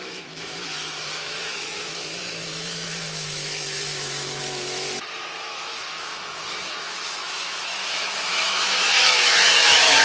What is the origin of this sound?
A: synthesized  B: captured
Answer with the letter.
A